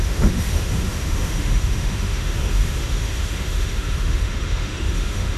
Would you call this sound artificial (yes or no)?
yes